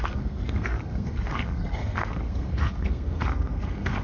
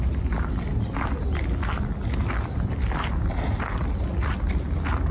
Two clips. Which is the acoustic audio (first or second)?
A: second